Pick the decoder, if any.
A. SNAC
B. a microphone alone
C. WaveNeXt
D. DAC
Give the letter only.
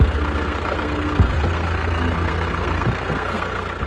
A